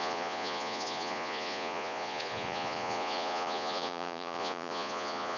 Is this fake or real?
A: fake